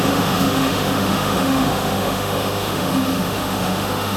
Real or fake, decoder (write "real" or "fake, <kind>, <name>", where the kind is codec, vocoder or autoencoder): fake, autoencoder, DAC-VAE